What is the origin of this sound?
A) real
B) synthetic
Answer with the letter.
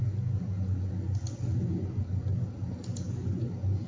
A